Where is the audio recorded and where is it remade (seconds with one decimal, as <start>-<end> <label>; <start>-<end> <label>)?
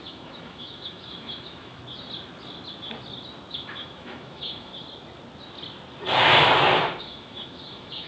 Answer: 0.0-1.8 remade; 1.8-3.5 recorded; 3.5-4.7 remade; 4.7-7.0 recorded; 7.0-8.1 remade